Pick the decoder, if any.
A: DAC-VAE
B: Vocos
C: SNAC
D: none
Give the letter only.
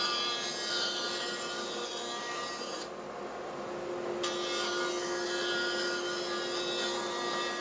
D